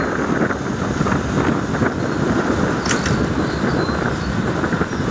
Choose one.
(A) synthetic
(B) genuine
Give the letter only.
B